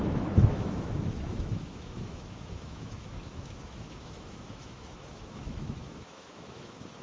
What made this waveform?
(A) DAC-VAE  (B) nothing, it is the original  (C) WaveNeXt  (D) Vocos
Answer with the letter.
A